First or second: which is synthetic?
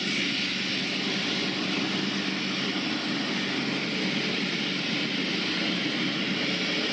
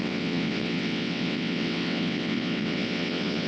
second